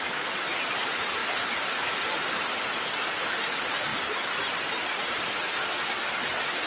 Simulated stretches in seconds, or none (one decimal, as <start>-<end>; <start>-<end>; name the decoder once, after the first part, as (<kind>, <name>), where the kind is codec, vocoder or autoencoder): none